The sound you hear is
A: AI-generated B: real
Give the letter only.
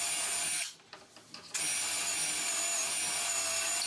B